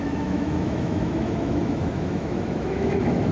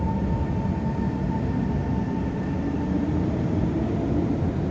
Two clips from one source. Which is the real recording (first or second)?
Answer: second